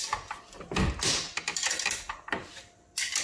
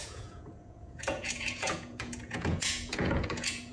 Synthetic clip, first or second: second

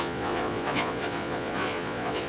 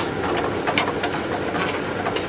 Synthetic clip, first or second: first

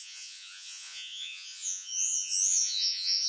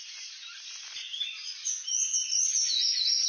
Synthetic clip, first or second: first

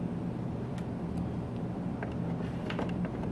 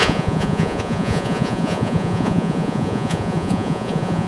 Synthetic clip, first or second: second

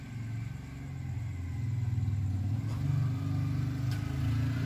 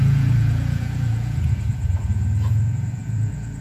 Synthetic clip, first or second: second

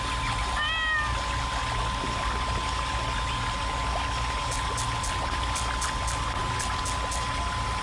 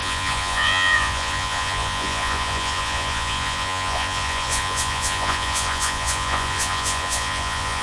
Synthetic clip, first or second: second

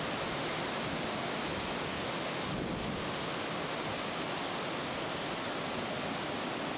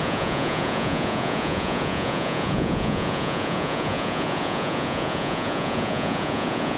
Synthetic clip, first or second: second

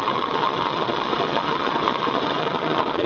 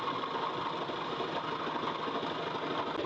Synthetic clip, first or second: first